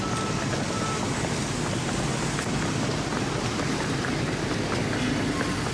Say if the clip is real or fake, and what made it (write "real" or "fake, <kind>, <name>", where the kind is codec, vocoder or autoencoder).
real